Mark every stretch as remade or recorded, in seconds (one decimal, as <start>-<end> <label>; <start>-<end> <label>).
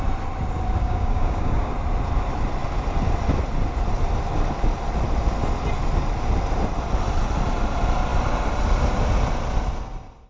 0.0-0.8 recorded; 0.8-1.7 remade; 1.7-10.3 recorded